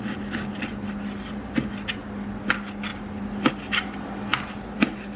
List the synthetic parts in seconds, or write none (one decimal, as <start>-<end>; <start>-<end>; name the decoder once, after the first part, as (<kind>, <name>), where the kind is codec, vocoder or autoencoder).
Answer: none